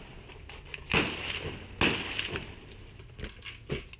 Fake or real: real